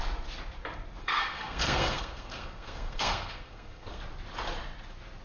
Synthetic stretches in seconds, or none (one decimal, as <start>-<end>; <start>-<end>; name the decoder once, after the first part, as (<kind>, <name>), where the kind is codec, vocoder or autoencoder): 1.0-4.0 (codec, SNAC)